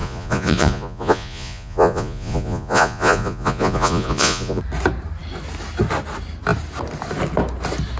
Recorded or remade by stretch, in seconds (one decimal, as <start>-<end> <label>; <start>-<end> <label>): 0.0-4.6 remade; 4.6-8.0 recorded